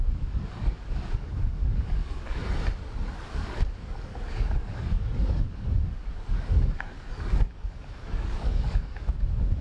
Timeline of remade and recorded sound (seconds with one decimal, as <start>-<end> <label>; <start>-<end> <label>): 0.0-2.4 remade; 2.4-3.3 recorded; 3.3-9.6 remade